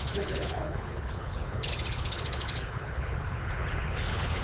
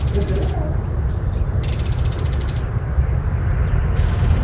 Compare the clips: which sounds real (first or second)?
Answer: second